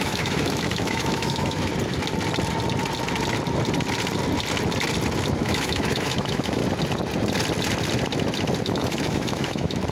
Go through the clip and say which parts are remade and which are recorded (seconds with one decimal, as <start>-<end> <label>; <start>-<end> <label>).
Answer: 0.0-1.7 remade; 1.7-5.4 recorded; 5.4-6.6 remade; 6.6-8.6 recorded; 8.6-9.9 remade